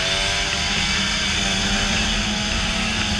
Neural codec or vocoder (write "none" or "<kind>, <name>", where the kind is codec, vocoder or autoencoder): none